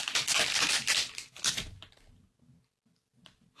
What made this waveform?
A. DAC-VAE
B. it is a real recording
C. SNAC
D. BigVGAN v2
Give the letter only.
B